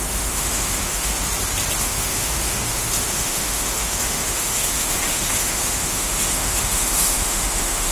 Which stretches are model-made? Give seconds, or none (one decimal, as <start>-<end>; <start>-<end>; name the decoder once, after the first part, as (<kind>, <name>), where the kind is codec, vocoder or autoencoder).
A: 0.0-1.1 (autoencoder, DAC-VAE); 1.8-7.9